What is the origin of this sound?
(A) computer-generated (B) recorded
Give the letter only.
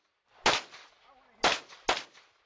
B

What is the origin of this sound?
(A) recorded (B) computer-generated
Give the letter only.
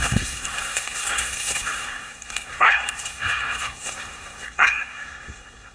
B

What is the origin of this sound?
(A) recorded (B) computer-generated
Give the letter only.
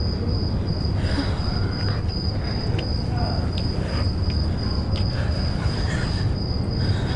A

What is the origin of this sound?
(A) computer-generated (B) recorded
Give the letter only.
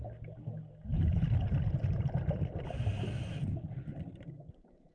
B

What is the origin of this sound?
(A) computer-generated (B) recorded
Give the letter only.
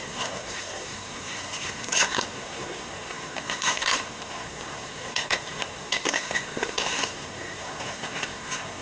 A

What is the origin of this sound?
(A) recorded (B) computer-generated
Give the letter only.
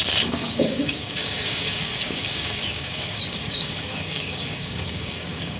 B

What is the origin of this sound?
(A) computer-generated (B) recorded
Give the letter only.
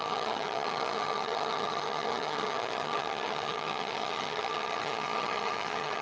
A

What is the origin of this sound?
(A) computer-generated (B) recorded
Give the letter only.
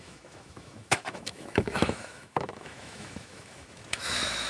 A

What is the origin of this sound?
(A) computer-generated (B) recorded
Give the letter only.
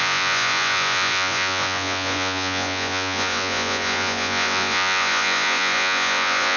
A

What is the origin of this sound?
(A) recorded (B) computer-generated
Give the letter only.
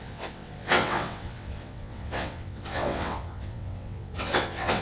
B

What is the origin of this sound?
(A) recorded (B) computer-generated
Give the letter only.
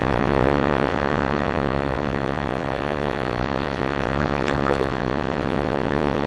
B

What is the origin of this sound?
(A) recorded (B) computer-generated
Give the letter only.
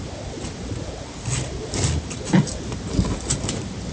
A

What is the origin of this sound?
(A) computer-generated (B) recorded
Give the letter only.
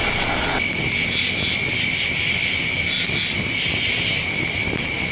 B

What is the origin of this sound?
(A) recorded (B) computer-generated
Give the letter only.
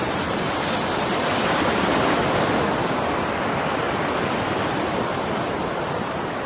B